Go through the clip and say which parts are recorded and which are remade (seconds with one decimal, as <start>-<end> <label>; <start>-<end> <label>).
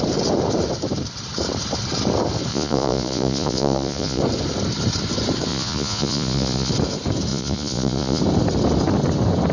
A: 0.0-2.5 recorded; 2.5-4.2 remade; 4.2-5.5 recorded; 5.5-6.7 remade; 6.7-7.3 recorded; 7.3-8.2 remade; 8.2-9.5 recorded